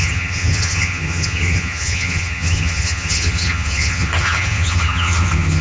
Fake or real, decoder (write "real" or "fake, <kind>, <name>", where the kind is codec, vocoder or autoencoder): fake, vocoder, HiFi-GAN